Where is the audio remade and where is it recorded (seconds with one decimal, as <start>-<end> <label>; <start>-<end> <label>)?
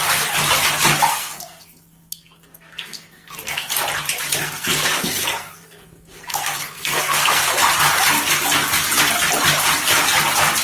0.0-1.1 recorded; 1.1-3.7 remade; 3.7-4.4 recorded; 4.4-7.5 remade; 7.5-10.6 recorded